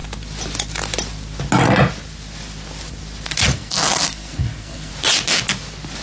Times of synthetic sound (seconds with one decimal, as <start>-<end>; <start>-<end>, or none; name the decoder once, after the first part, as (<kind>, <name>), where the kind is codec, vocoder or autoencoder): 3.5-4.9 (codec, SNAC)